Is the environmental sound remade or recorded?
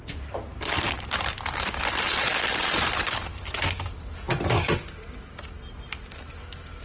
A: recorded